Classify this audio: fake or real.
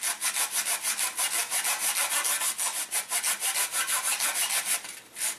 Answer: real